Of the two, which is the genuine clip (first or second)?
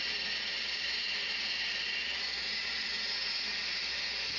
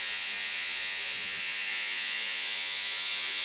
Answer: first